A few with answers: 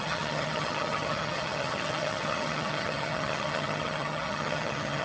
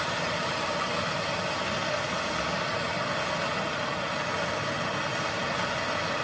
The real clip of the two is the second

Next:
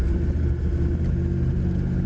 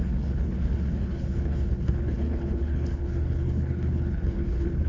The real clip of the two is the first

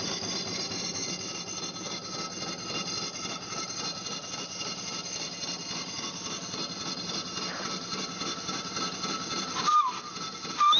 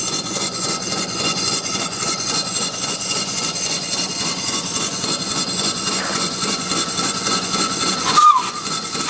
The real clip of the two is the first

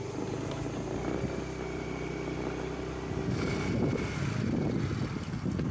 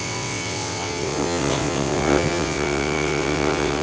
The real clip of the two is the first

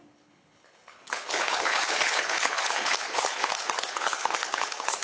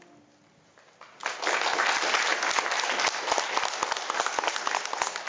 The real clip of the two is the second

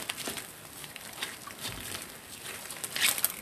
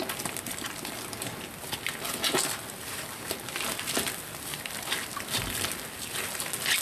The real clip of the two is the second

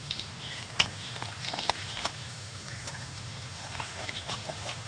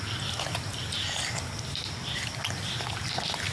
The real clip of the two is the second